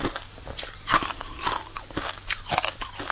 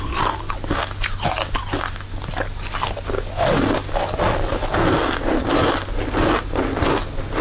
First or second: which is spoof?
first